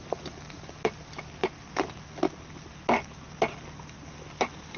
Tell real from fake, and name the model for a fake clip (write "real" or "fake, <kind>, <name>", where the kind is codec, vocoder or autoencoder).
real